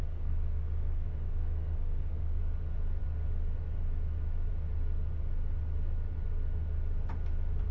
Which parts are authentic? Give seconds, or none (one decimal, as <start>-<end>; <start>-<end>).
2.4-7.7